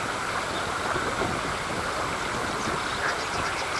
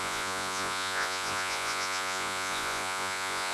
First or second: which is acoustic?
first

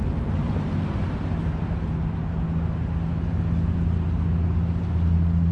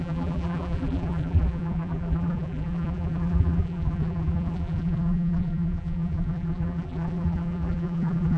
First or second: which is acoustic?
first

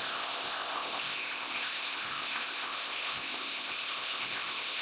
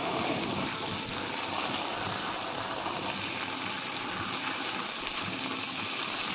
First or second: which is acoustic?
second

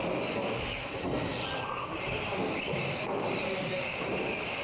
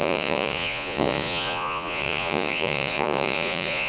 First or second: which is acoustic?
first